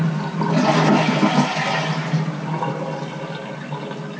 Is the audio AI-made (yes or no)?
no